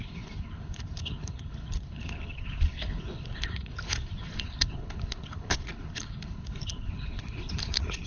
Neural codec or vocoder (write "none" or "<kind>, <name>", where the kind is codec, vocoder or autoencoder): codec, HILCodec